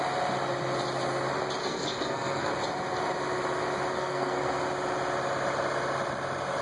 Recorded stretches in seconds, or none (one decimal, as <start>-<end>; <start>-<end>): 0.0-1.6; 2.5-3.9; 4.6-6.6